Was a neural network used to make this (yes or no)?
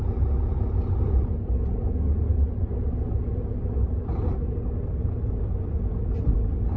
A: no